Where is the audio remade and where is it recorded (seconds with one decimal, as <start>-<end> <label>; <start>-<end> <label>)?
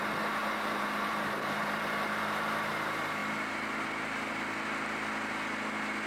0.0-0.4 recorded; 0.4-2.7 remade; 2.7-6.1 recorded